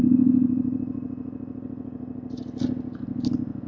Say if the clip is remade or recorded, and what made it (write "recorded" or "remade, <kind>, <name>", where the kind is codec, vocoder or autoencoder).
recorded